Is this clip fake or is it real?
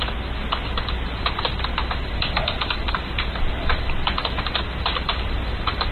real